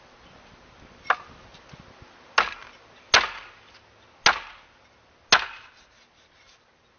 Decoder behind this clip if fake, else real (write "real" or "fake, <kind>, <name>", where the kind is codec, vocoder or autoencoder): real